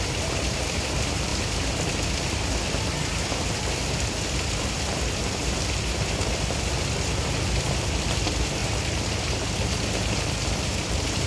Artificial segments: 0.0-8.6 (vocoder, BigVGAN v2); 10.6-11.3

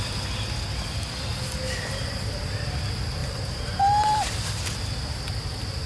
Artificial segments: 3.2-4.4 (vocoder, BigVGAN v2)

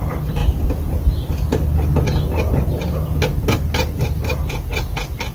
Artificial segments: 3.3-3.9 (vocoder, BigVGAN v2)

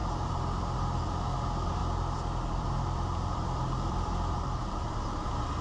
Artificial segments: 0.0-1.0 (vocoder, BigVGAN v2); 1.8-5.6

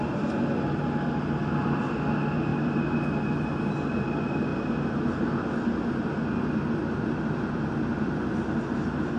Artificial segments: none

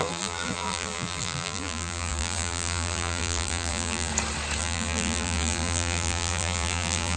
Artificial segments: 0.0-4.1 (vocoder, BigVGAN v2); 4.6-7.2

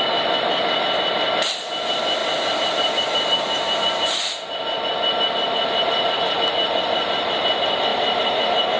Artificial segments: 2.2-4.2 (vocoder, BigVGAN v2); 7.9-8.8

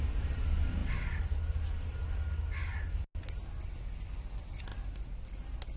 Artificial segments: 0.0-0.8 (vocoder, BigVGAN v2); 4.3-4.7